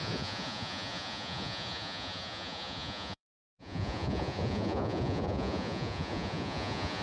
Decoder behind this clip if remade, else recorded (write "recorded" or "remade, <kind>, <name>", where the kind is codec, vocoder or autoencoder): remade, vocoder, Vocos